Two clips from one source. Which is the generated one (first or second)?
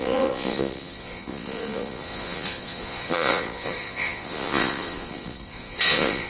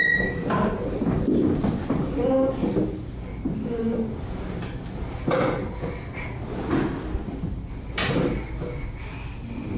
first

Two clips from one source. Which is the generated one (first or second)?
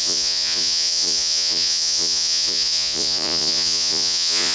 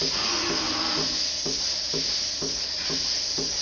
first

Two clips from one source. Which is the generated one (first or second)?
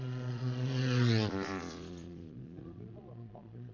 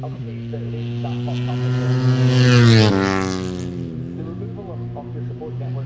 first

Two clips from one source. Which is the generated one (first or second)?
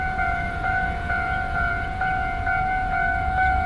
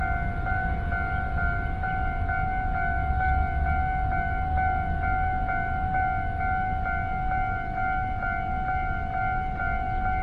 first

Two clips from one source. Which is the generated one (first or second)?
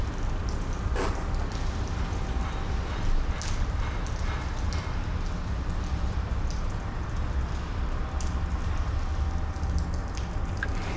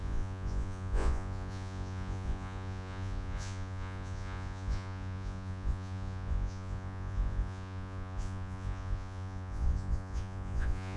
second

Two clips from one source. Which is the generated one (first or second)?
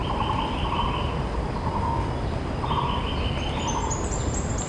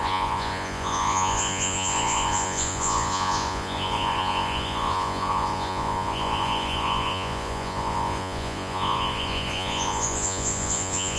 second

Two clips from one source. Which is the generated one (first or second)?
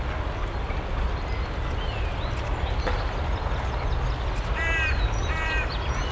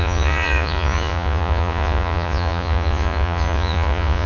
second